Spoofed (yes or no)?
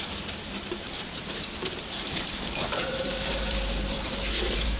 yes